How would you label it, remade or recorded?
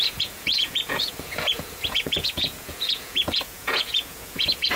remade